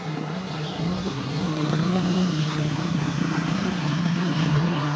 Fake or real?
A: fake